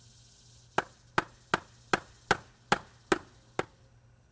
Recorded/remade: recorded